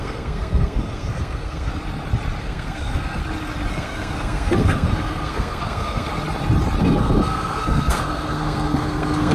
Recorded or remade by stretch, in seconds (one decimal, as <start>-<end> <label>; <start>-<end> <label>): 0.0-1.7 remade; 1.7-2.4 recorded; 2.4-3.2 remade; 3.2-3.7 recorded; 3.7-6.1 remade; 6.1-6.8 recorded; 6.8-9.3 remade